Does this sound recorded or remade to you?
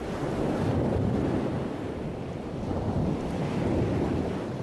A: recorded